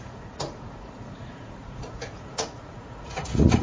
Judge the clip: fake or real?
fake